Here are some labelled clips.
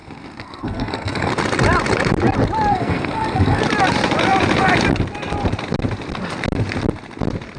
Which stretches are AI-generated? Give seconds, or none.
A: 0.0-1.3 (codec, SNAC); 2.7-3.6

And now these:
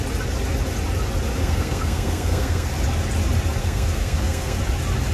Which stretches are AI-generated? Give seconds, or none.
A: 1.4-2.7 (codec, SNAC); 3.6-4.6

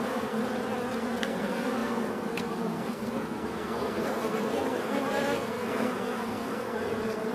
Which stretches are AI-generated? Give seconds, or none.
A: 0.0-0.4 (codec, SNAC); 1.0-7.3